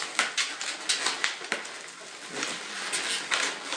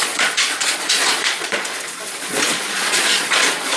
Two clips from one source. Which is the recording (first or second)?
first